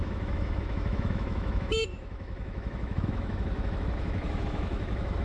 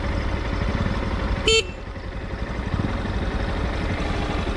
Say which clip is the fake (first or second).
first